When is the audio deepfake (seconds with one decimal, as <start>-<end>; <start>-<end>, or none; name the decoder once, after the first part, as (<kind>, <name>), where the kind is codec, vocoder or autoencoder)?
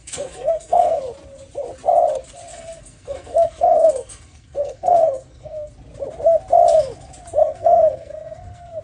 0.0-1.0 (codec, SNAC); 2.5-5.7; 7.4-8.8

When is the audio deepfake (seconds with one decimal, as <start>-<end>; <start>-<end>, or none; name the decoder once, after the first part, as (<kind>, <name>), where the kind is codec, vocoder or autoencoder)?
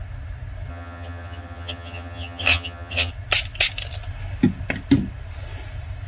0.7-3.1 (vocoder, HiFi-GAN)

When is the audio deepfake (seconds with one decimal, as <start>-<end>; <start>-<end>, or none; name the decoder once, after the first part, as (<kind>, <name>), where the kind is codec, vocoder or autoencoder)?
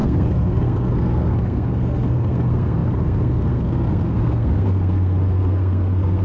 0.0-6.2 (codec, SNAC)